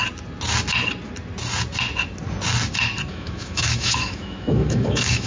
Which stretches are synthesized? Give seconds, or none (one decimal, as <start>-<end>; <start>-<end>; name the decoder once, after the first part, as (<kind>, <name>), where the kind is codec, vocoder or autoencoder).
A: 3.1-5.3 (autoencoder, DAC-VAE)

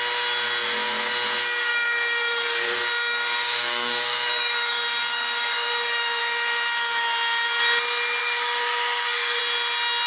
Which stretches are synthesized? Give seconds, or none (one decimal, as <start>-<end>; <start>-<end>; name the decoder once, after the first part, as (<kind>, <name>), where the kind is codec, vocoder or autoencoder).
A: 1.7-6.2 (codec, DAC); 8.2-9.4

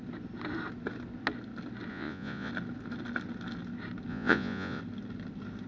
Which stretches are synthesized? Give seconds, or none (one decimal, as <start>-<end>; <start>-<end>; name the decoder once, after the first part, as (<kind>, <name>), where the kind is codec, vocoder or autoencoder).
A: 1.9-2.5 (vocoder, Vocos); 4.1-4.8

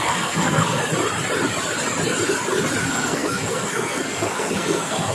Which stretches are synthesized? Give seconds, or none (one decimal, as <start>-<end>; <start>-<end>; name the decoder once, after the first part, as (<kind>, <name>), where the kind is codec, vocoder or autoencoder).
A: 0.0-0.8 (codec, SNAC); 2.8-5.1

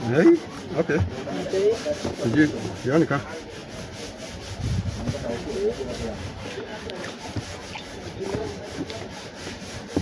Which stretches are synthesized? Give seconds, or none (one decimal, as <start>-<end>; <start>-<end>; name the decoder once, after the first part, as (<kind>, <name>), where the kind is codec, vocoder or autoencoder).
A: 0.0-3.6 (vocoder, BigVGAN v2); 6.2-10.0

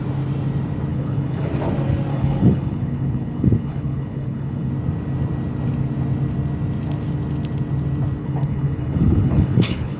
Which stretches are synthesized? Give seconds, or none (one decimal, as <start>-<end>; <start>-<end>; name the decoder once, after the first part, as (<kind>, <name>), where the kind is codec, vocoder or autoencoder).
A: 0.9-1.5 (codec, HILCodec); 2.1-4.7; 8.2-10.0